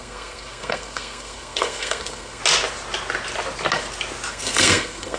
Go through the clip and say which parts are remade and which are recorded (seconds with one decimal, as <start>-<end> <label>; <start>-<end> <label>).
0.0-2.4 remade; 2.4-4.3 recorded; 4.3-5.2 remade